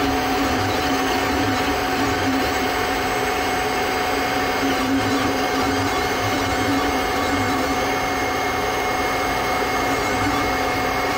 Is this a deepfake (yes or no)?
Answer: yes